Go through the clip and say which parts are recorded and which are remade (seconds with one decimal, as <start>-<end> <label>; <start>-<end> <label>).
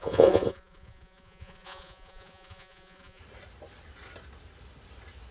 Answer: 0.0-3.2 remade; 3.2-5.3 recorded